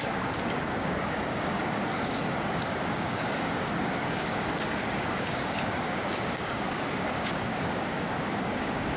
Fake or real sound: fake